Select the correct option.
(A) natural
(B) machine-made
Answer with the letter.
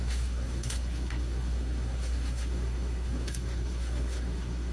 B